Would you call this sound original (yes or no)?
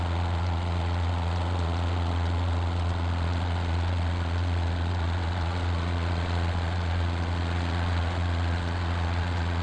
no